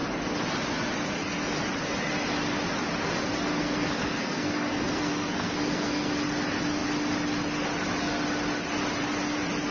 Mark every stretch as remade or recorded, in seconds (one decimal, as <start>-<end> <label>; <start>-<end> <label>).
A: 0.0-3.5 recorded; 3.5-6.2 remade; 6.2-9.7 recorded